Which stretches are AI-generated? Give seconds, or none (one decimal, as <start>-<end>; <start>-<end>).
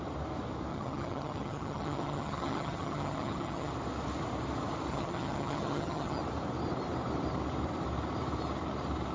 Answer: 0.7-3.7; 4.9-6.2